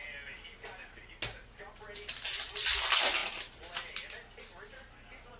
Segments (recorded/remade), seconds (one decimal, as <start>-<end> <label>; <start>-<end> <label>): 0.0-5.4 recorded

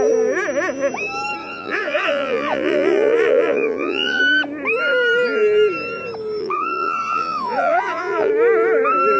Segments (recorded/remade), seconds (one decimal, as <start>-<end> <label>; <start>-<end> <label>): 0.0-1.4 recorded; 1.4-4.2 remade; 4.2-6.4 recorded; 6.4-8.3 remade; 8.3-9.2 recorded

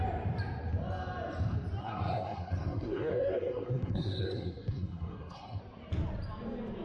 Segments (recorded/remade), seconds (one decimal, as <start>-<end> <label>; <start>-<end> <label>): 0.0-1.8 recorded; 1.8-5.6 remade; 5.6-6.8 recorded

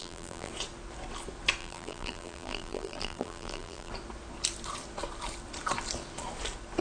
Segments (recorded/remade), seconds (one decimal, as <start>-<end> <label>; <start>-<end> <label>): 0.0-0.5 remade; 0.5-1.6 recorded; 1.6-3.9 remade; 3.9-6.8 recorded

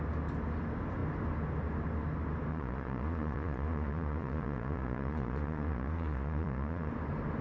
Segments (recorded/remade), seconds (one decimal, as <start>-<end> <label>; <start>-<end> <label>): 0.0-2.5 recorded; 2.5-6.9 remade; 6.9-7.4 recorded

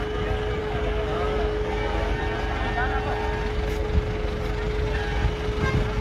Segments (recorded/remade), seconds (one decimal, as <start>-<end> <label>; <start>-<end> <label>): 0.0-0.6 recorded; 0.6-2.2 remade; 2.2-6.0 recorded

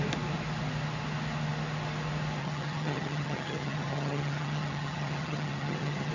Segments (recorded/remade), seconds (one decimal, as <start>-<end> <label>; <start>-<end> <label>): 0.0-2.4 recorded; 2.4-6.1 remade

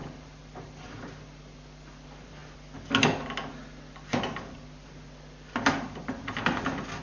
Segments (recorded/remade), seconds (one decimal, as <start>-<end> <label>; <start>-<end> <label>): 0.0-7.0 recorded